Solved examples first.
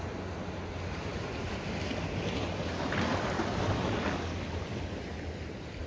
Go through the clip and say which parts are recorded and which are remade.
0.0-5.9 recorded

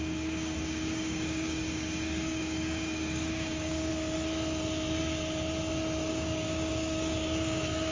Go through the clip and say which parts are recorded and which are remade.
0.0-3.9 remade; 3.9-6.1 recorded; 6.1-7.9 remade